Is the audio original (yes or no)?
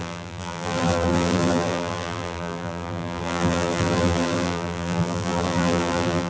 no